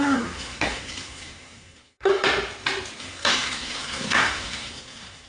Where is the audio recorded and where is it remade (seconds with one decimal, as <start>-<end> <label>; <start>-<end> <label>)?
0.0-2.1 remade; 2.1-3.0 recorded; 3.0-5.3 remade